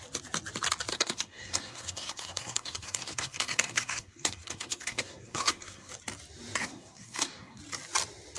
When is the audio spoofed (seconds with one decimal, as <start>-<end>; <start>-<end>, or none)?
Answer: 0.9-5.9; 6.6-7.6